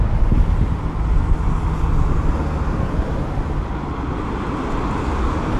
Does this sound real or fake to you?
real